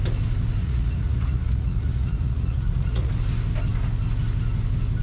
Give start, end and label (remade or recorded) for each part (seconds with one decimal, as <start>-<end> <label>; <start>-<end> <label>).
0.0-0.6 recorded; 0.6-3.1 remade; 3.1-5.0 recorded